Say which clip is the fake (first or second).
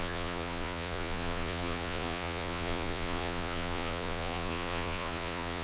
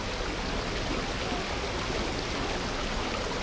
first